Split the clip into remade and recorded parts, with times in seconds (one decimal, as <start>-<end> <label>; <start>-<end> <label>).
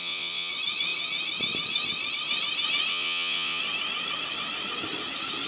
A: 0.0-0.5 remade; 0.5-2.9 recorded; 2.9-3.6 remade; 3.6-5.5 recorded